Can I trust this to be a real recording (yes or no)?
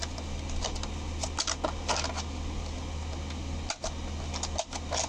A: yes